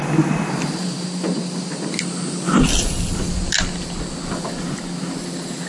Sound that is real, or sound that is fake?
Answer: real